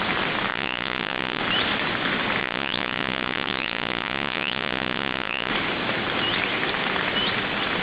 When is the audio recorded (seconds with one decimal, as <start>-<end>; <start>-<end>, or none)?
0.0-0.5; 1.4-2.4; 5.5-7.8